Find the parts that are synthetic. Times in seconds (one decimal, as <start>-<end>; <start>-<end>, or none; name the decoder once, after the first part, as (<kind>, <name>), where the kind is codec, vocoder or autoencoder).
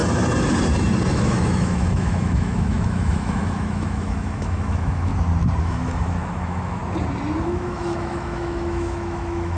1.1-5.1 (autoencoder, DAC-VAE); 5.6-6.8; 7.4-9.6